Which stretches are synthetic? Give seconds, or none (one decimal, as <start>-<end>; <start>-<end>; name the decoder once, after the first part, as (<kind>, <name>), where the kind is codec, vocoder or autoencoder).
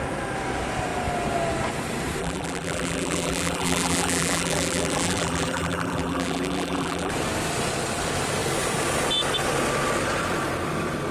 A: 2.2-7.1 (vocoder, BigVGAN v2)